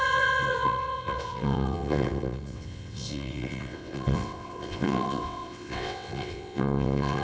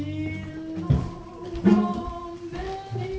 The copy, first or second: first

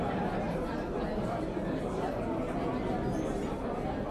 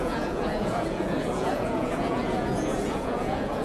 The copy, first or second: second